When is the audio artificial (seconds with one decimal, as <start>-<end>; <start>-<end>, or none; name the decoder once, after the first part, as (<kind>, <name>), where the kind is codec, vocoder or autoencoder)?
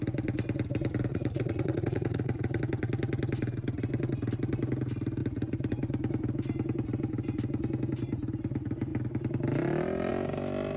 1.1-2.6 (vocoder, Vocos)